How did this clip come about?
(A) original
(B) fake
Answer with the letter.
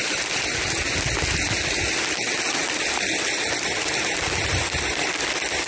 A